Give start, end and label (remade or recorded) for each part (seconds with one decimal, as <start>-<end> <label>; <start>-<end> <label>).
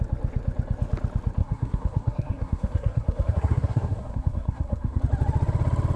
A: 0.0-1.4 recorded; 1.4-5.0 remade; 5.0-6.0 recorded